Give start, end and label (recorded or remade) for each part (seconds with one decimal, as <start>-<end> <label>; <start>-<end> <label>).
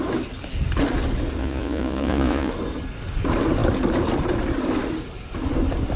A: 0.0-1.4 recorded; 1.4-2.5 remade; 2.5-6.0 recorded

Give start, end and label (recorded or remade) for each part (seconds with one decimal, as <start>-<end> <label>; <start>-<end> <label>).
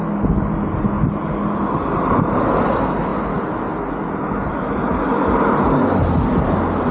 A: 0.0-6.9 recorded